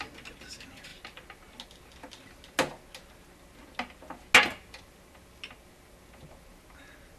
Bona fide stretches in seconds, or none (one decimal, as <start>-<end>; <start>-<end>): 0.0-7.2